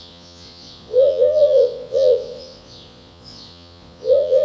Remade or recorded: remade